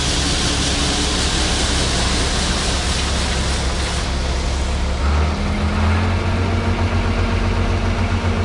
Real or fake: real